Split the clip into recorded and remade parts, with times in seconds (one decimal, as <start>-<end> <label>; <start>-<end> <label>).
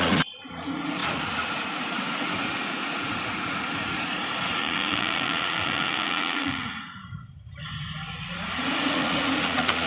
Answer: 0.0-7.0 remade; 7.0-8.1 recorded; 8.1-9.9 remade